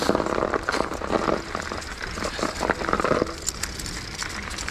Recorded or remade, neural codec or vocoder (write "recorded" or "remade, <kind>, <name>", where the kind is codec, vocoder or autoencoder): recorded